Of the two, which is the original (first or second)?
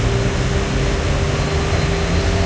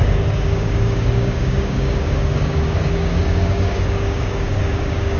first